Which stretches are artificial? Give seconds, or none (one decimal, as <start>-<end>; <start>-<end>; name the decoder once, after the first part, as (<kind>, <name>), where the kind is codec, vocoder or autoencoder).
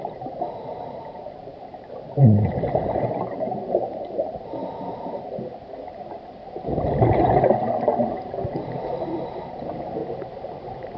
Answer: 0.0-4.6 (vocoder, BigVGAN v2); 8.1-11.0